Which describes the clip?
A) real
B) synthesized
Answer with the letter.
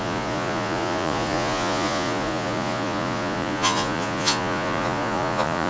B